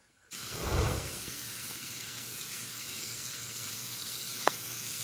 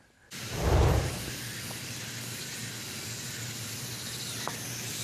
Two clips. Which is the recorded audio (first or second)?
second